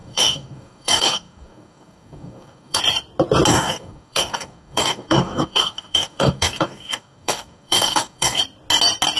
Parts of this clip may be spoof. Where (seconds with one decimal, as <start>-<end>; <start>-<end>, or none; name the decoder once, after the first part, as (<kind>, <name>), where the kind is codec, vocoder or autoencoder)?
0.0-2.8 (codec, DAC); 3.5-8.4